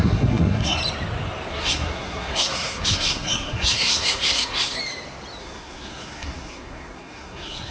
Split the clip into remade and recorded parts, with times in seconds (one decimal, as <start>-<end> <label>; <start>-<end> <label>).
0.0-0.8 remade; 0.8-1.5 recorded; 1.5-4.8 remade; 4.8-5.4 recorded; 5.4-7.7 remade

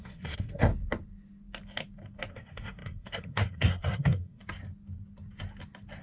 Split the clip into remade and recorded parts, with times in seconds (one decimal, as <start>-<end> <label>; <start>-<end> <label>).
0.0-0.7 remade; 0.7-2.3 recorded; 2.3-4.4 remade; 4.4-6.0 recorded

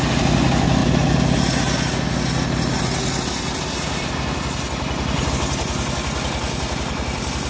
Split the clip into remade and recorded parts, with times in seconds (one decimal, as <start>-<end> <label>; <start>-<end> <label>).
0.0-7.5 recorded

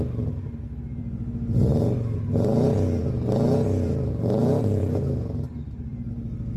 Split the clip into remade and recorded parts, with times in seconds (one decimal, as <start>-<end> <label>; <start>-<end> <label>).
0.0-4.8 recorded; 4.8-6.1 remade; 6.1-6.6 recorded

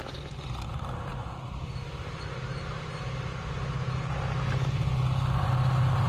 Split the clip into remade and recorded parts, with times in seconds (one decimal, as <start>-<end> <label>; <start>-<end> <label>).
0.0-6.1 recorded

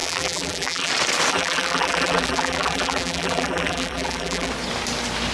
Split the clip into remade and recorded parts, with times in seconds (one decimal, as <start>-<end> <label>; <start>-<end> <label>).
0.0-0.9 remade; 0.9-1.3 recorded; 1.3-4.5 remade; 4.5-5.3 recorded

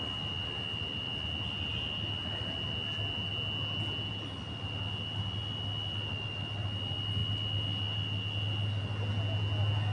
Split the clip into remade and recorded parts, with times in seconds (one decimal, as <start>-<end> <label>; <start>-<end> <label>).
0.0-9.9 recorded